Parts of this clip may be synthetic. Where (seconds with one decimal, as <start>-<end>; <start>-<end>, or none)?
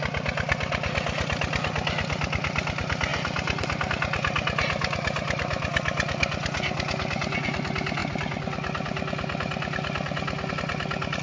none